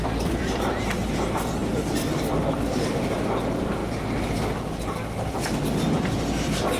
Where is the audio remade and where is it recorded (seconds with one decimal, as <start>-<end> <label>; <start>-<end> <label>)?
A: 0.0-3.8 remade; 3.8-5.3 recorded; 5.3-6.8 remade